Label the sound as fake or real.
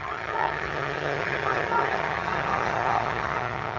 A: fake